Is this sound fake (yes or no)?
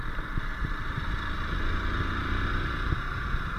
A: no